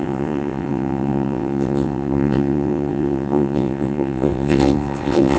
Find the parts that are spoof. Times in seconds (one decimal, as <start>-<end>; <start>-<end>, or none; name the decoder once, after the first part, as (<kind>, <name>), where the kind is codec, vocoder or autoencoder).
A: 0.0-5.4 (vocoder, WaveNeXt)